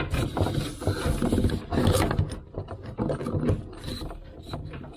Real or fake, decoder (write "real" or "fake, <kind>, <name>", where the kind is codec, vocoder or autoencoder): real